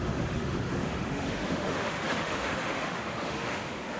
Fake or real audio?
fake